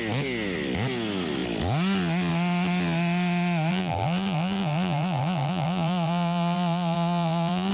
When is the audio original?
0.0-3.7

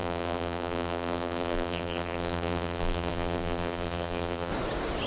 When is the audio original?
4.5-5.1

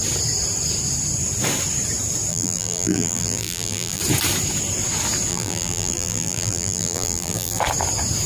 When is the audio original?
0.0-2.3; 4.0-5.3; 7.6-8.3

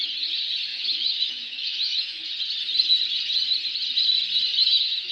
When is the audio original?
0.0-0.7; 2.3-4.6

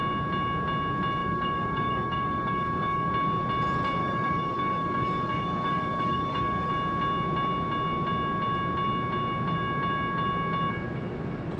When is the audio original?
0.0-1.2; 3.1-4.0; 6.7-11.6

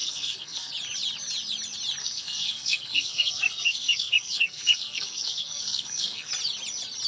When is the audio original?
0.7-2.0; 6.3-7.1

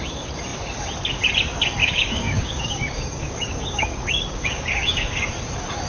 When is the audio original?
0.0-1.8; 5.3-5.9

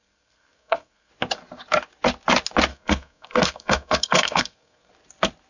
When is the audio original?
1.1-2.7; 4.9-5.5